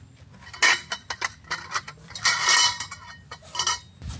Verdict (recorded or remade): recorded